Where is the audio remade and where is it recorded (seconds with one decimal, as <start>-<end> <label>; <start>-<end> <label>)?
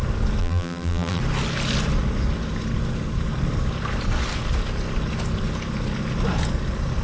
0.0-0.4 recorded; 0.4-1.2 remade; 1.2-7.0 recorded